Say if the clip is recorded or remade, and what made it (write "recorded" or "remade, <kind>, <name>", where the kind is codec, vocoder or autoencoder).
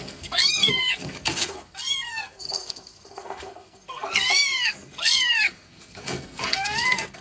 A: remade, codec, SNAC